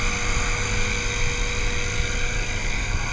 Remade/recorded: recorded